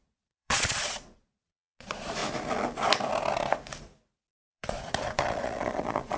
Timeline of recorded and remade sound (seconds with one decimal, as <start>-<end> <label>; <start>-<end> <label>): 0.0-2.2 remade; 2.2-4.5 recorded; 4.5-6.2 remade